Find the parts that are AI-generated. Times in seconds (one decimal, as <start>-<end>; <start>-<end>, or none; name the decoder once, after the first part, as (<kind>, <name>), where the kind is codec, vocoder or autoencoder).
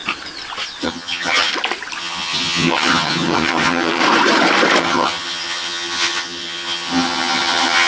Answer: 0.8-1.5 (vocoder, HiFi-GAN); 2.0-4.0; 4.8-7.9